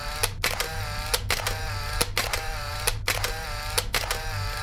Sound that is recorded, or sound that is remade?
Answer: remade